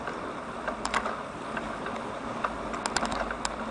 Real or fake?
real